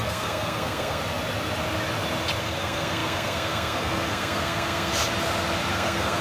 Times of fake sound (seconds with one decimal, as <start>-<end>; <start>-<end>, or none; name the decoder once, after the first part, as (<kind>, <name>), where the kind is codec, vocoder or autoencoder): 0.0-1.0 (codec, SNAC); 2.4-4.9; 5.7-6.2